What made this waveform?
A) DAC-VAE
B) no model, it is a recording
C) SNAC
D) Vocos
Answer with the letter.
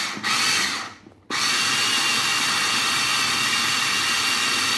B